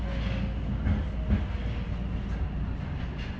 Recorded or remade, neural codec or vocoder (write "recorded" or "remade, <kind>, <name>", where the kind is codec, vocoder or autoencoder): recorded